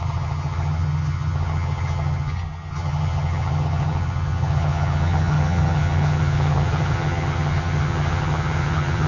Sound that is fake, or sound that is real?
fake